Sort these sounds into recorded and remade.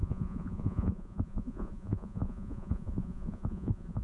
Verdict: remade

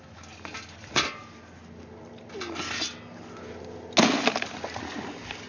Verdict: recorded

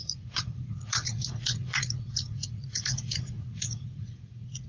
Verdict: remade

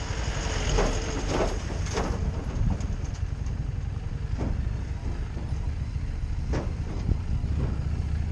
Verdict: recorded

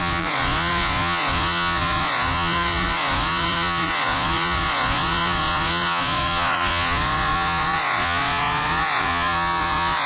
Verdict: remade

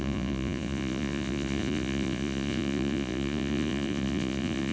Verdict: remade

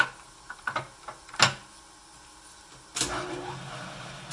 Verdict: recorded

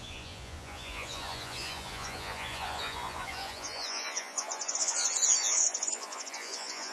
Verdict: remade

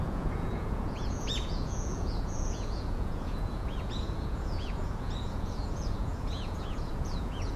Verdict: remade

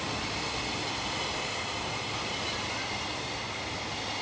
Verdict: recorded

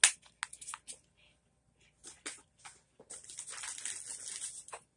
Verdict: recorded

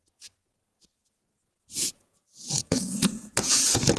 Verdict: remade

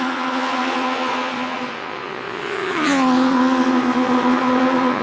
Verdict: remade